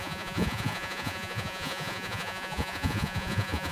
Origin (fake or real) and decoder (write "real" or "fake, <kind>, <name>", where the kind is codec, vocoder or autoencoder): fake, vocoder, Vocos